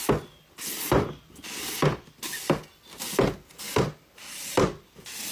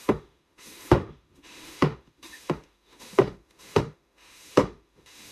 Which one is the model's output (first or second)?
second